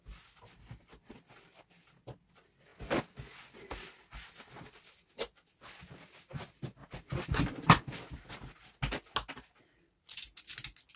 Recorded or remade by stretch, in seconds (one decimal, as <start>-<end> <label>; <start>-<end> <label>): 0.0-11.0 recorded